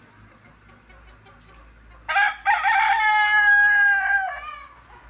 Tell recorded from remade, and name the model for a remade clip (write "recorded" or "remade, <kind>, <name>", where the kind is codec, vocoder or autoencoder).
recorded